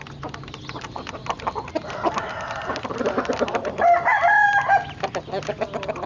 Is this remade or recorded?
recorded